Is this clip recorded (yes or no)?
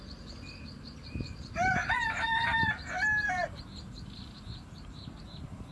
yes